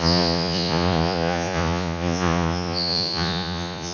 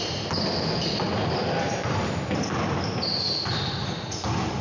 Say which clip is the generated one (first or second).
first